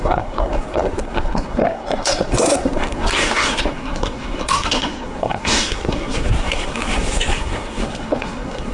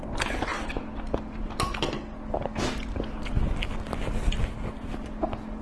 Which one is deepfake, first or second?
first